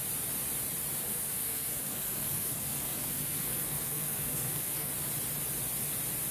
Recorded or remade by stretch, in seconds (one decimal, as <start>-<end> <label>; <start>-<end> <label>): 0.0-1.1 recorded; 1.1-4.9 remade; 4.9-6.3 recorded